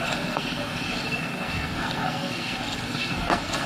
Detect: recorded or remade remade